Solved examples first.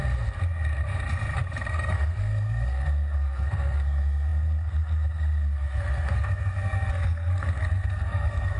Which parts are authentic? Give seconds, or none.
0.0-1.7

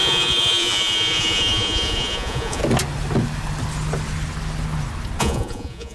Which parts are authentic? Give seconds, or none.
2.6-5.2

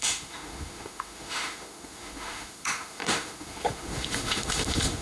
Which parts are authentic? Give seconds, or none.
none

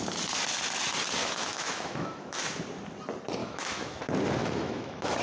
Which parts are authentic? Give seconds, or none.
0.0-1.2; 2.6-3.4; 4.0-4.4

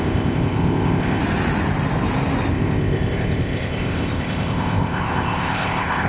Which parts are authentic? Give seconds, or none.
1.2-2.5

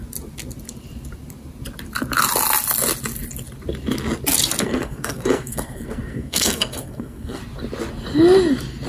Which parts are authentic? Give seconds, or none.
0.0-4.6; 7.4-8.9

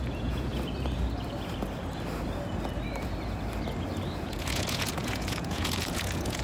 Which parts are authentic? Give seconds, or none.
0.5-4.2

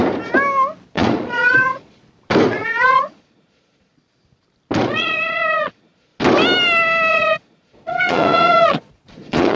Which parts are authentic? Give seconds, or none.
0.0-0.9; 2.0-2.5; 3.9-4.8; 6.1-7.1